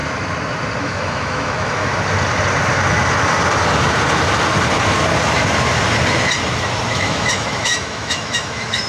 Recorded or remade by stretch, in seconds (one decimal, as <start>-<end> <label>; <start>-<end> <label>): 0.0-0.8 recorded; 0.8-1.9 remade; 1.9-6.9 recorded; 6.9-8.9 remade